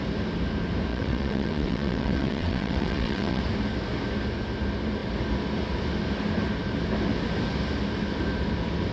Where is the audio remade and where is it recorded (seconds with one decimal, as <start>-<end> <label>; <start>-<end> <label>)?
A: 0.0-0.9 recorded; 0.9-3.4 remade; 3.4-8.9 recorded